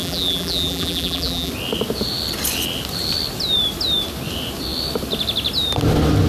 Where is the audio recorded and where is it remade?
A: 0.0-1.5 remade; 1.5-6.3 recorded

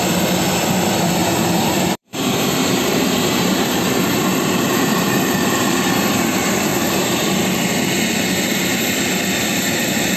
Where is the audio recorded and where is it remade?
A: 0.0-1.2 recorded; 1.2-5.9 remade; 5.9-6.7 recorded; 6.7-7.4 remade; 7.4-10.2 recorded

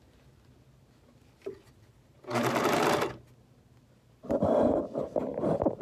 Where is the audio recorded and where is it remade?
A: 0.0-2.3 recorded; 2.3-2.8 remade; 2.8-5.3 recorded; 5.3-5.8 remade

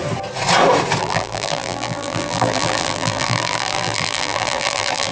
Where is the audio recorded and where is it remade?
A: 0.0-1.0 recorded; 1.0-5.1 remade

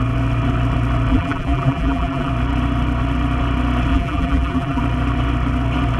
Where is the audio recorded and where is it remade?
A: 0.0-1.1 recorded; 1.1-2.3 remade; 2.3-3.9 recorded; 3.9-4.8 remade; 4.8-6.0 recorded